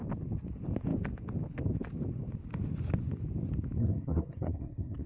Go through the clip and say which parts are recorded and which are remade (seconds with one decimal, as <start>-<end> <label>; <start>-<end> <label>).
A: 0.0-3.8 recorded; 3.8-5.1 remade